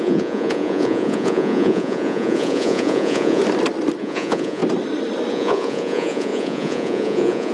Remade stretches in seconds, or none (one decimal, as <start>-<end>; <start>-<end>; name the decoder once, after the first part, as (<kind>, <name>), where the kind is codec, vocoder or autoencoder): 0.0-3.4 (vocoder, Vocos); 4.0-4.6; 5.3-7.5